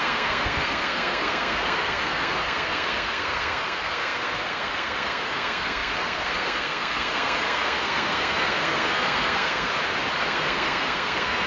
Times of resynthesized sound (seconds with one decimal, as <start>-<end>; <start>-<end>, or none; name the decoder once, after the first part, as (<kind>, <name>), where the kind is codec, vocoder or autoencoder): 0.0-9.7 (codec, SNAC); 10.2-11.5